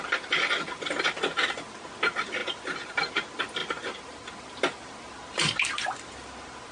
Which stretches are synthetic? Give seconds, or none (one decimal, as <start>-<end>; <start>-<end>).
none